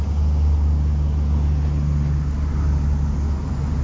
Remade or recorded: recorded